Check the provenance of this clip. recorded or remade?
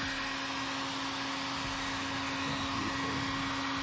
recorded